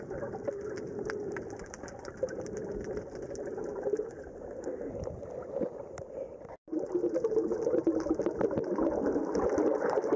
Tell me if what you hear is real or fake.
real